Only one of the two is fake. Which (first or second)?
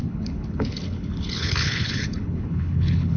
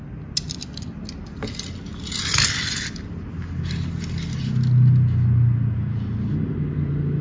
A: first